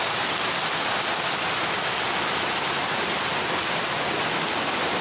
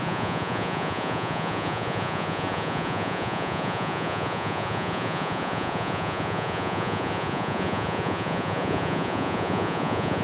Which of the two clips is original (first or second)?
first